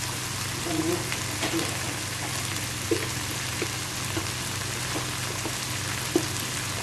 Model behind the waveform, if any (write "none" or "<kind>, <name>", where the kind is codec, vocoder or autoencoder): none